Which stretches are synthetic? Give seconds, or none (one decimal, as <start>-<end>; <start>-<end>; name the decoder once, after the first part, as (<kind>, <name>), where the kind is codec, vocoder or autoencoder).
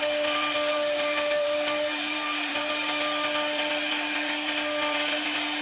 0.7-2.7 (vocoder, BigVGAN v2)